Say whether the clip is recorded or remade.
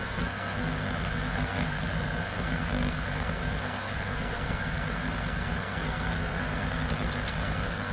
remade